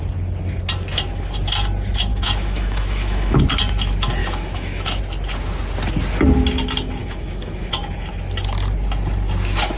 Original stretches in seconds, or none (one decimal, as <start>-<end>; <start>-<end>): 0.0-2.1; 3.4-4.2; 5.0-7.0; 7.7-9.8